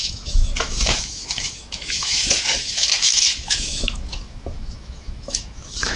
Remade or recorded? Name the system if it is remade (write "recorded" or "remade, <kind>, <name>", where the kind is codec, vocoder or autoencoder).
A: remade, autoencoder, DAC-VAE